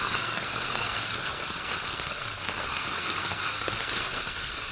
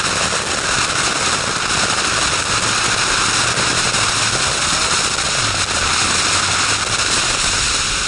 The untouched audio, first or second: second